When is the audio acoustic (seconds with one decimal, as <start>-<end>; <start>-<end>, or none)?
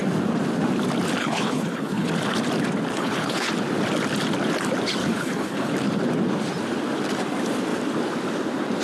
0.0-1.2; 2.1-2.9; 3.5-5.0; 5.7-8.8